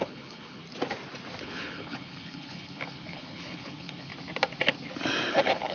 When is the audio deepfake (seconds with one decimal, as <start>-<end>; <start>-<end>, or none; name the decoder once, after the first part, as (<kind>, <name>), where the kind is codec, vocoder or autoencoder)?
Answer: 0.0-0.6 (codec, HILCodec); 1.4-4.1; 5.3-5.7